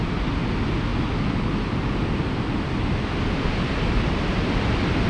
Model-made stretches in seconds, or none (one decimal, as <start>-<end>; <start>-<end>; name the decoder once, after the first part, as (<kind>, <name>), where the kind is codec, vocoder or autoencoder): none